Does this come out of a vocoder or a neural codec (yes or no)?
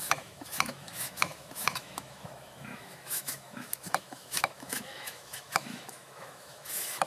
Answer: yes